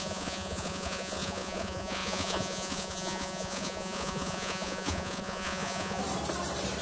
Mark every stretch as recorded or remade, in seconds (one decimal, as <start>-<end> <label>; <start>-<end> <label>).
0.0-6.0 remade; 6.0-6.8 recorded